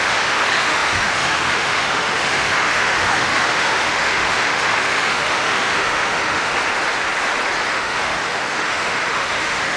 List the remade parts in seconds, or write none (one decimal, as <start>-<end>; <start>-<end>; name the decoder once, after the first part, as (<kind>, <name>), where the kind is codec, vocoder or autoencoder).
0.0-6.5 (autoencoder, DAC-VAE); 7.7-9.8

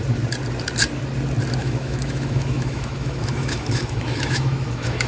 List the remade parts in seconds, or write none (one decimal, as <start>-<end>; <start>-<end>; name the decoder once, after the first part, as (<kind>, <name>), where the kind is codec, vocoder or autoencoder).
1.6-5.1 (autoencoder, DAC-VAE)